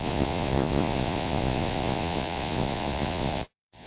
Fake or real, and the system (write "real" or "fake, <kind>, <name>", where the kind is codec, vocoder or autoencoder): fake, vocoder, Vocos